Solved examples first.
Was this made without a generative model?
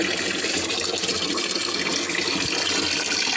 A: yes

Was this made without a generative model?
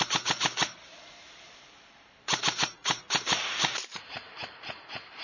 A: no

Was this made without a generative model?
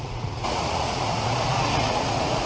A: no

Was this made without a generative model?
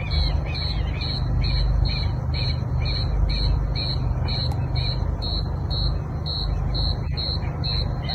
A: yes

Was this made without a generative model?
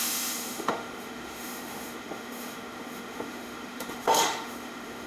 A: no